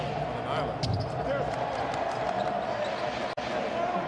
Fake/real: real